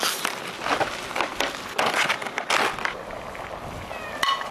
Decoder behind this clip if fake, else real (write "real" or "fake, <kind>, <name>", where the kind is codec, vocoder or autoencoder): real